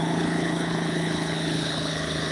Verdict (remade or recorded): remade